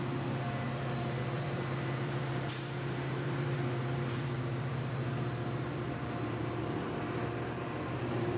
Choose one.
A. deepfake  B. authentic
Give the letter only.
A